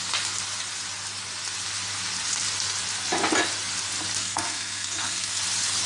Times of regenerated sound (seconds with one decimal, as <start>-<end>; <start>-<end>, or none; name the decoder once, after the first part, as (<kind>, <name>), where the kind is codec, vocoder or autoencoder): 4.2-5.4 (codec, SNAC)